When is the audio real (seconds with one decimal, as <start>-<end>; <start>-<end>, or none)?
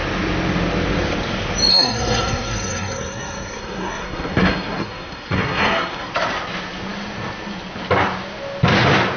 0.0-1.7; 6.1-9.2